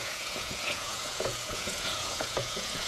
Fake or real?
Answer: fake